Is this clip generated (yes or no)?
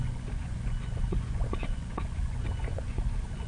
yes